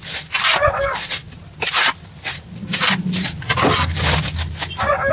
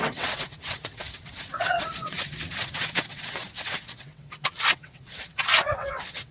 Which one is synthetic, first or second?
second